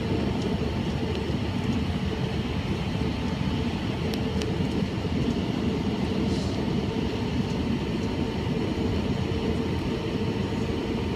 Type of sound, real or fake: real